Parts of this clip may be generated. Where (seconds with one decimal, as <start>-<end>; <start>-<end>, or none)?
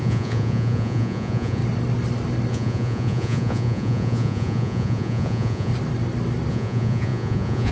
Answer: 0.0-1.6; 2.5-5.7; 6.5-7.7